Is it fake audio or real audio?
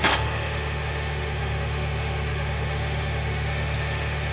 fake